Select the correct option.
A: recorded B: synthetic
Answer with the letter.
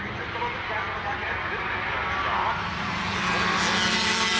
A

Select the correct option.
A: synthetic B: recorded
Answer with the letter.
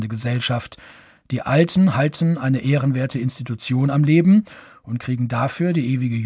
B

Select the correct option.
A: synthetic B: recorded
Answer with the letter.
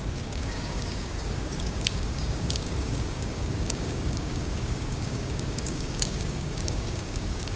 A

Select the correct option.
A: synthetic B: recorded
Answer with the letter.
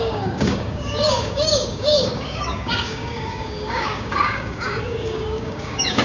A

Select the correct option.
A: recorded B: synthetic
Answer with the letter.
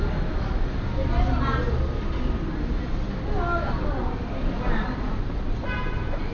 A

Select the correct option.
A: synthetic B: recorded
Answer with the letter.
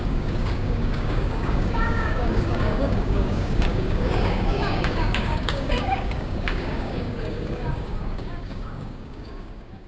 A